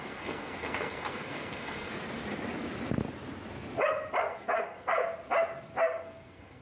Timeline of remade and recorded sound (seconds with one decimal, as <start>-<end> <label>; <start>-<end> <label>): 0.0-1.9 remade; 1.9-4.2 recorded; 4.2-5.0 remade; 5.0-5.8 recorded; 5.8-6.6 remade